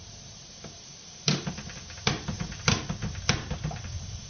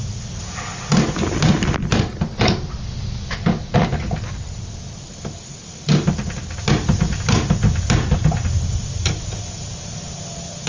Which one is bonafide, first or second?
second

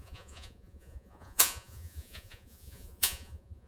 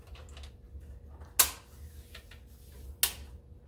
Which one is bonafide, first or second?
second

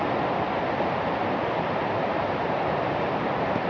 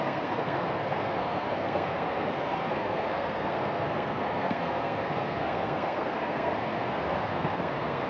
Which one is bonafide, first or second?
first